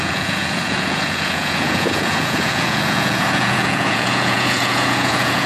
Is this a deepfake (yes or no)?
yes